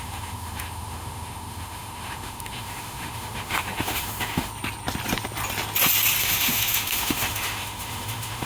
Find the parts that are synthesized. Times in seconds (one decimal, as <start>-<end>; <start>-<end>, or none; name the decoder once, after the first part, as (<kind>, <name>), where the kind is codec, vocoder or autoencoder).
0.0-4.5 (autoencoder, DAC-VAE); 6.2-8.5